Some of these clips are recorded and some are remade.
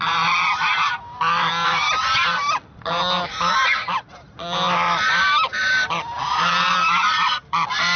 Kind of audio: recorded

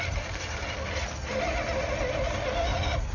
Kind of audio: recorded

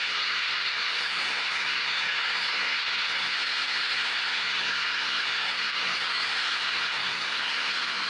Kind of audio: remade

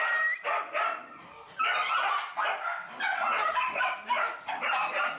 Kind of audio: recorded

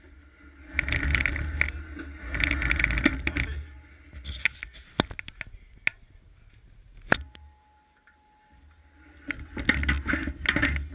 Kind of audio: recorded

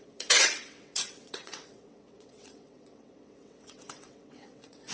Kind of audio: remade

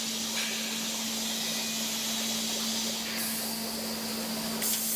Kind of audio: recorded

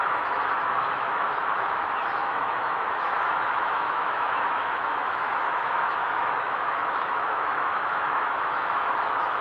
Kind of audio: remade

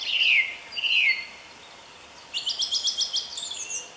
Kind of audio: recorded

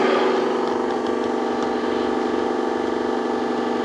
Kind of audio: recorded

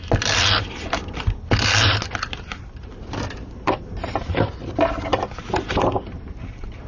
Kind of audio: recorded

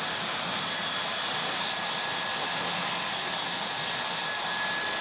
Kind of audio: recorded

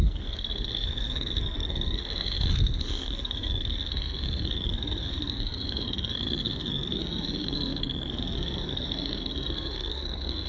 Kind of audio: remade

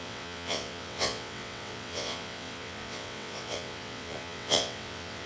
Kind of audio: remade